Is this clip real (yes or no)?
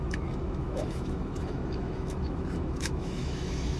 no